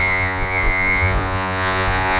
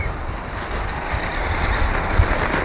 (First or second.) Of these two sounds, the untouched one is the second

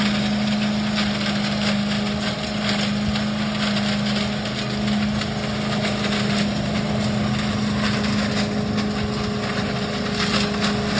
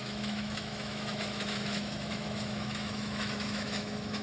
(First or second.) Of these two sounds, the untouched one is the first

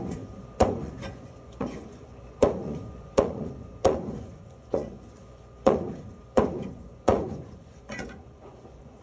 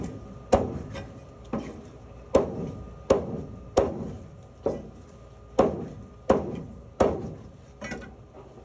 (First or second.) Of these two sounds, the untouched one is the second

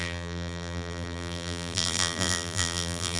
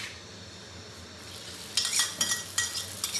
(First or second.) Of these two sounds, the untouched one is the second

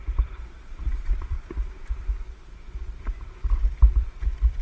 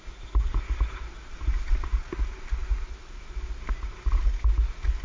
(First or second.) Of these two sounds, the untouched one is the second